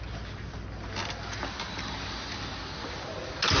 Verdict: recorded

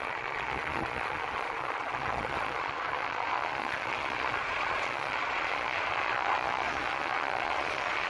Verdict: remade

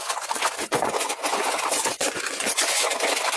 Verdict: remade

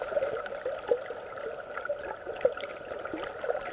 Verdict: recorded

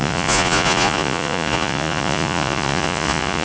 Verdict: remade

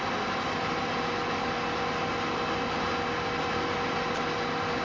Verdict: recorded